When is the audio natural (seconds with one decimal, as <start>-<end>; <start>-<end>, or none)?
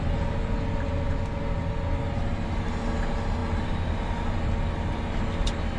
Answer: 0.0-5.8